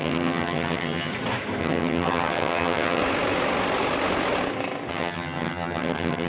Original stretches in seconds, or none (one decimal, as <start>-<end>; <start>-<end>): 1.1-1.6; 3.0-4.9